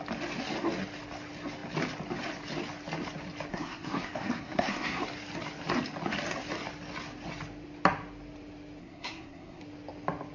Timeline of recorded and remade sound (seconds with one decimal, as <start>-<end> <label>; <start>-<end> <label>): 0.0-3.5 recorded; 3.5-5.0 remade; 5.0-8.8 recorded; 8.8-9.6 remade; 9.6-10.3 recorded